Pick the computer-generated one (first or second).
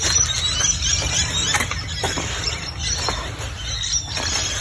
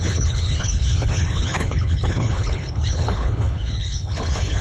second